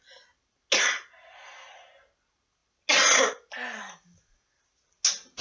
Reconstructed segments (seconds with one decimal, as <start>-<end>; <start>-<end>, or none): none